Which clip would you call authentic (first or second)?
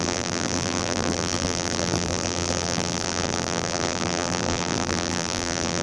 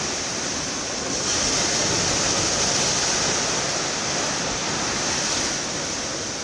second